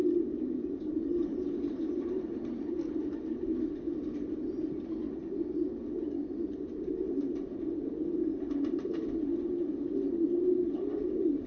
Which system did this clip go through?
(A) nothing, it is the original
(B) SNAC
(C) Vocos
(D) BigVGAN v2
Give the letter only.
A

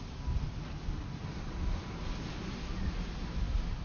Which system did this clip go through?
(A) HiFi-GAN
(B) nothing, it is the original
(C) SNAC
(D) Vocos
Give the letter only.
B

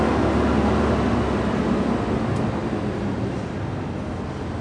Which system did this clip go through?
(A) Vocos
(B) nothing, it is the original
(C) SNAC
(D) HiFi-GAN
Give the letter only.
B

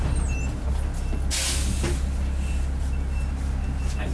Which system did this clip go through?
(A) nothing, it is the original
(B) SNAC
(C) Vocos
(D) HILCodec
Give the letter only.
A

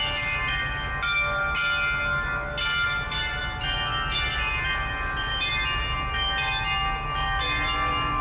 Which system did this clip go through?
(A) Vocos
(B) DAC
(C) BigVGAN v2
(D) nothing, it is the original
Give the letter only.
D